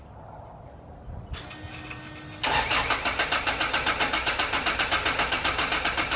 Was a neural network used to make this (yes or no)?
no